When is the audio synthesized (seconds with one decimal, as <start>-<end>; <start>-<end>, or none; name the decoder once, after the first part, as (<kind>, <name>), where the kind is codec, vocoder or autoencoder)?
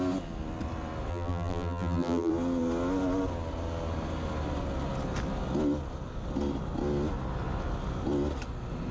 1.1-2.3 (vocoder, BigVGAN v2)